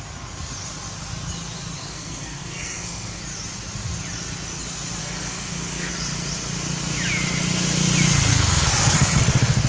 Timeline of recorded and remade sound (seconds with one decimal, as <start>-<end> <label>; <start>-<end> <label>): 0.0-1.8 recorded; 1.8-3.2 remade; 3.2-5.0 recorded; 5.0-5.9 remade; 5.9-8.3 recorded; 8.3-9.2 remade; 9.2-9.7 recorded